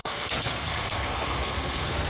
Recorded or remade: remade